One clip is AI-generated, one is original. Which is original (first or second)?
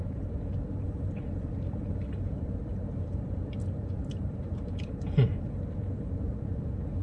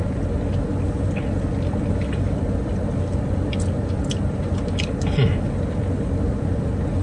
second